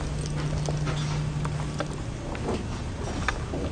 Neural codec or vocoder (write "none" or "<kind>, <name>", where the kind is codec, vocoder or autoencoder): none